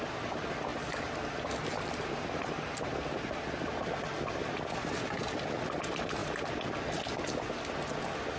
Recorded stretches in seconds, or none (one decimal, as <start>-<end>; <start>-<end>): 0.0-8.4